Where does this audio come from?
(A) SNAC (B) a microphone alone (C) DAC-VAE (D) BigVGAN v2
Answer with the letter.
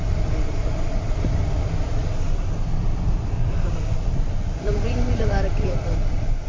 D